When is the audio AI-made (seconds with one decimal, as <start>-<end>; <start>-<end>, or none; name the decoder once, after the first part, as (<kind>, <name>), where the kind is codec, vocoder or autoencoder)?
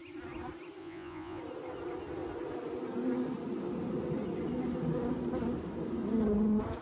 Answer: 0.8-1.4 (vocoder, Vocos)